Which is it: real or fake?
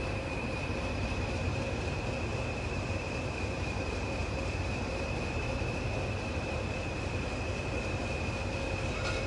fake